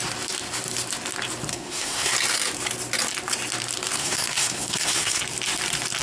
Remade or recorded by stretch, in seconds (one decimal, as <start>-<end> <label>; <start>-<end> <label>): 0.0-1.5 recorded; 1.5-2.1 remade; 2.1-4.0 recorded; 4.0-5.2 remade; 5.2-6.0 recorded